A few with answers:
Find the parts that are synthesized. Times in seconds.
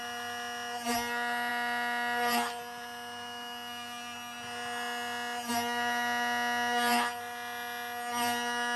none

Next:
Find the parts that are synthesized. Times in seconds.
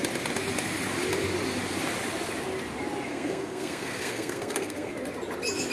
3.1-4.9 (codec, SNAC)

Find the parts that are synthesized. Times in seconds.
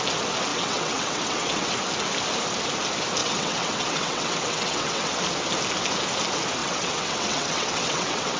0.5-1.7 (vocoder, WaveNeXt); 3.2-5.2; 6.6-8.4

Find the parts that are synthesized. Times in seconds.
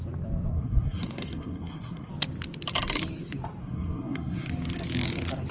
0.5-2.1 (codec, SNAC); 3.6-4.5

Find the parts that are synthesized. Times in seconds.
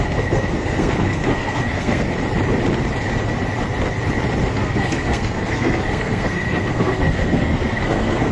0.0-2.1 (codec, SNAC); 4.5-8.3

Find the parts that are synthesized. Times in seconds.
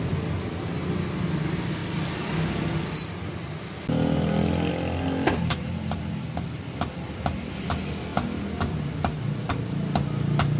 none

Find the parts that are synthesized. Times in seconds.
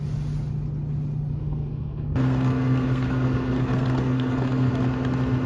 1.4-4.7 (codec, SNAC)